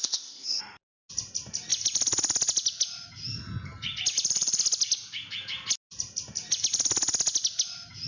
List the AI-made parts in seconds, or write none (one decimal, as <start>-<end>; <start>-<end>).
0.0-0.6

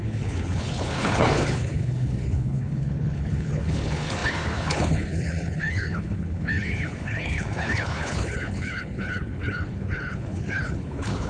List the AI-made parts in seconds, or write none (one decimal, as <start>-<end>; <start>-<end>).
0.0-11.3

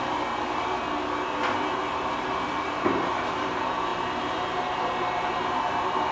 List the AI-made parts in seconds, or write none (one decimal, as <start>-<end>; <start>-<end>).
0.0-0.8; 1.9-6.1